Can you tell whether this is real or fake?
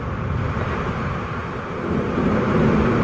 real